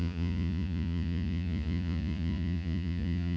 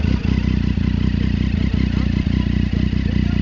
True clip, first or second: second